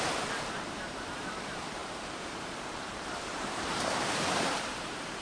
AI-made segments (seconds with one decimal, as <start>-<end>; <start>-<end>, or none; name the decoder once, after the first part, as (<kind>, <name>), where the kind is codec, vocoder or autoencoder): 0.0-5.2 (vocoder, BigVGAN v2)